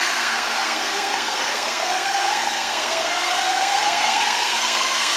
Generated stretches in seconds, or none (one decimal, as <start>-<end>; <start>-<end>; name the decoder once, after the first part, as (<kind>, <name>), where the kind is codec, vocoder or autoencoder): 0.0-5.2 (codec, SNAC)